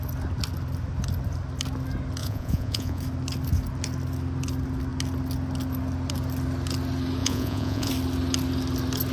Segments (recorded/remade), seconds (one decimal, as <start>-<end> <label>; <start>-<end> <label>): 0.0-2.2 recorded; 2.2-3.0 remade; 3.0-7.2 recorded; 7.2-7.9 remade; 7.9-9.1 recorded